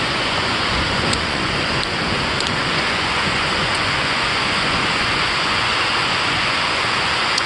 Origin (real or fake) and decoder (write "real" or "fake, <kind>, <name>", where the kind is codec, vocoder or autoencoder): fake, vocoder, Vocos